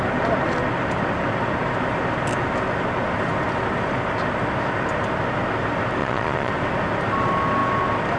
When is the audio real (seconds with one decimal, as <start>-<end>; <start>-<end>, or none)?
0.0-6.0; 6.5-8.2